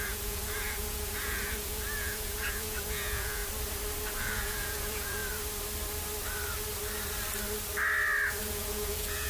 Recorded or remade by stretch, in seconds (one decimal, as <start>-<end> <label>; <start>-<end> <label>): 0.0-3.4 remade; 3.4-4.2 recorded; 4.2-5.2 remade; 5.2-8.4 recorded; 8.4-9.3 remade